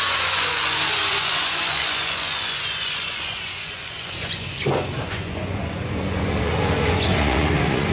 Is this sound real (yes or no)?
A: no